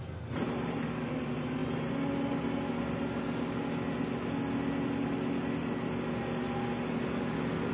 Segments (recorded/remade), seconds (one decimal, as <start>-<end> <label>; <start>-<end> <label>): 0.0-7.7 recorded